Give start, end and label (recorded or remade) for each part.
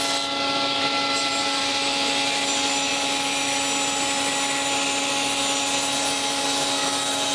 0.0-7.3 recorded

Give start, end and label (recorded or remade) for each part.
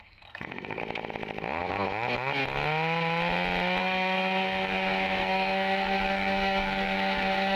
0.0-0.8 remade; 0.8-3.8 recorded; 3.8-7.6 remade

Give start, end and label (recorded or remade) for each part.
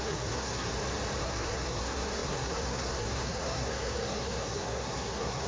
0.0-0.7 remade; 0.7-1.2 recorded; 1.2-5.5 remade